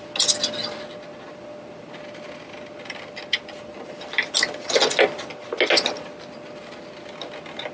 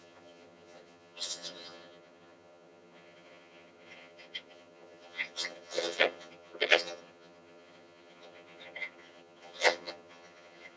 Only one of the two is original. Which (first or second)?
first